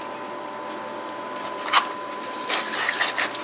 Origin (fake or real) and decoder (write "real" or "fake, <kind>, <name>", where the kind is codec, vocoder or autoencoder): real